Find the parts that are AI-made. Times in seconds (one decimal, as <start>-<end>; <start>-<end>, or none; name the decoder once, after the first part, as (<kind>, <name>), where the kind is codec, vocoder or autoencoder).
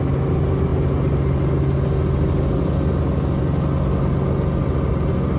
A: none